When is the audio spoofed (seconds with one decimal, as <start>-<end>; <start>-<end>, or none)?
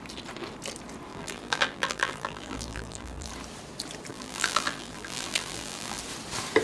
1.1-3.3; 4.1-6.0